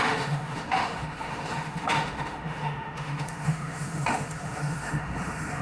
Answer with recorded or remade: remade